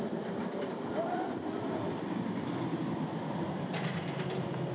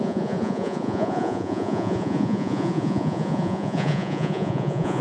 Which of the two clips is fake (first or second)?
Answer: second